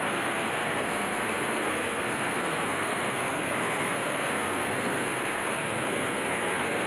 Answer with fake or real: fake